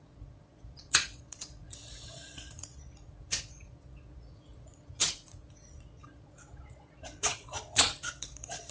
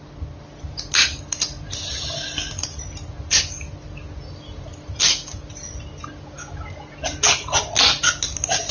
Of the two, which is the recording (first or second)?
second